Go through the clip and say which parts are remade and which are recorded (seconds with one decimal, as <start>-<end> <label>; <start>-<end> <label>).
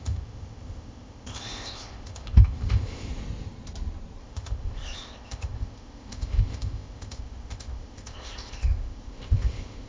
0.0-3.1 remade; 3.1-4.2 recorded; 4.2-9.9 remade